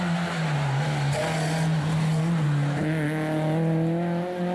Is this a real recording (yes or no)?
yes